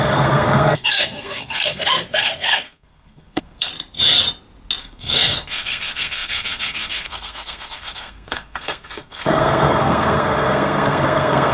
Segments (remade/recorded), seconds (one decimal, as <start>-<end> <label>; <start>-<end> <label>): 0.0-3.7 remade; 3.7-4.8 recorded; 4.8-11.5 remade